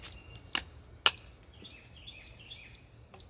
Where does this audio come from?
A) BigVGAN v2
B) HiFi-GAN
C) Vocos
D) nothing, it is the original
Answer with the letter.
D